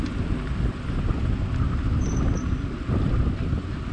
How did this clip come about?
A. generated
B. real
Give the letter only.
B